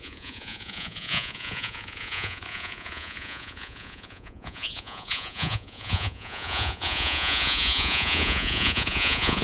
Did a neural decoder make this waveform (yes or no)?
yes